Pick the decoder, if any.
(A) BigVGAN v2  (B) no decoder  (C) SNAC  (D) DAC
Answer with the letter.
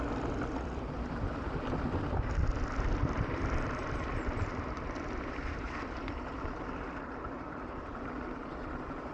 A